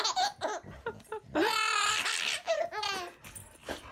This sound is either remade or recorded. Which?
recorded